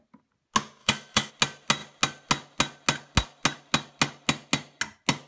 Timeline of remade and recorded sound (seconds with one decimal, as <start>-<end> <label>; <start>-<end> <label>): 0.0-0.8 recorded; 0.8-1.3 remade; 1.3-5.3 recorded